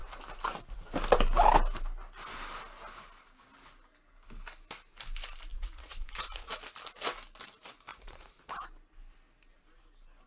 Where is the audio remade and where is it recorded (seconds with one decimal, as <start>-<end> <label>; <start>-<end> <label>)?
0.0-5.5 recorded; 5.5-6.5 remade; 6.5-7.9 recorded; 7.9-8.4 remade; 8.4-10.3 recorded